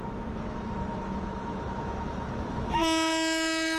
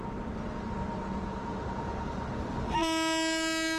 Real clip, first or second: second